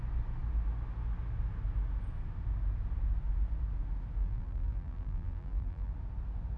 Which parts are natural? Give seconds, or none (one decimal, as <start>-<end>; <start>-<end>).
0.0-4.2; 5.9-6.6